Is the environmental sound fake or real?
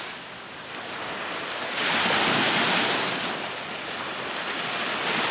real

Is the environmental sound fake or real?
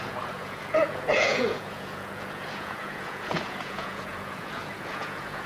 fake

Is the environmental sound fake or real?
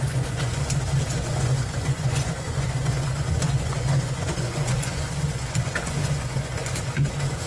fake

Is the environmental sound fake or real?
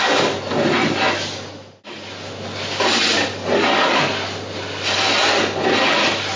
real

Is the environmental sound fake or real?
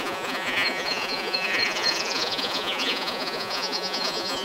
fake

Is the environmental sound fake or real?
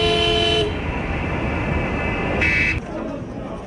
real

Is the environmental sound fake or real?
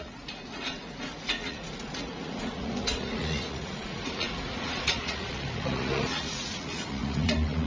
fake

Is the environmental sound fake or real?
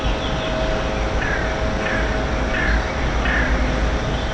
real